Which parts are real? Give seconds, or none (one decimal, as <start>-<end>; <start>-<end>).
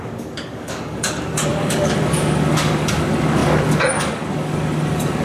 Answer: none